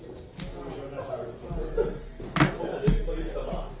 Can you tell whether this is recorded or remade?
recorded